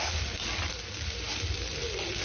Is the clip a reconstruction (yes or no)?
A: no